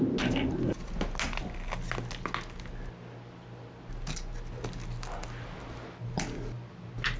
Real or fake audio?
real